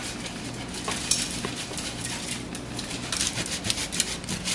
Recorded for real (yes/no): no